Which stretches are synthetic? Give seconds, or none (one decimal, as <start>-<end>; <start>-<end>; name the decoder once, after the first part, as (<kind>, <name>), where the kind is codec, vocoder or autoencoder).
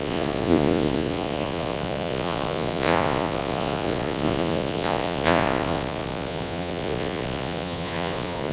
0.0-8.5 (vocoder, Vocos)